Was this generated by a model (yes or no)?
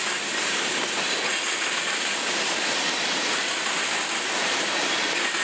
no